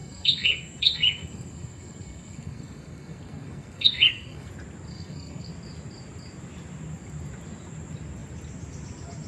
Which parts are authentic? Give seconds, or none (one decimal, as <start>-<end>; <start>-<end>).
4.5-4.9; 5.5-9.3